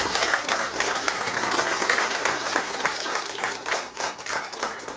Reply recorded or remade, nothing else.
remade